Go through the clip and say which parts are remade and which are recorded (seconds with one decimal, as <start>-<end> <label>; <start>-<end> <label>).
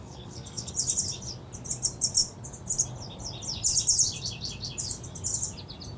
0.0-0.7 remade; 0.7-6.0 recorded